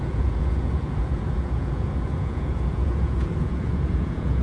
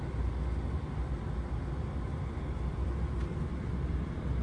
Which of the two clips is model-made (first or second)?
first